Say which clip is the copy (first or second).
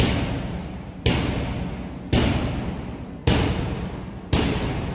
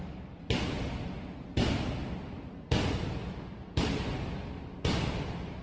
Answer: second